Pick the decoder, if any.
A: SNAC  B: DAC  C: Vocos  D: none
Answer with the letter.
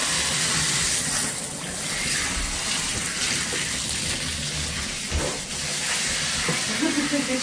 D